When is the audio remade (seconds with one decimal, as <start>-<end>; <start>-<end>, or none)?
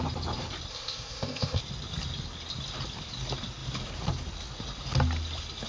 0.7-1.6